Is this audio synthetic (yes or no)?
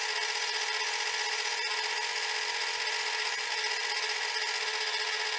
no